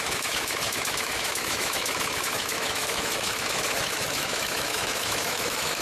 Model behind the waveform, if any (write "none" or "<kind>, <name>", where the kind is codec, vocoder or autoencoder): autoencoder, DAC-VAE